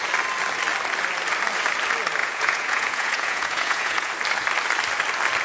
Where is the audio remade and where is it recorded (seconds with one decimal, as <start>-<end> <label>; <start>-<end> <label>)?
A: 0.0-2.2 recorded; 2.2-4.1 remade; 4.1-5.4 recorded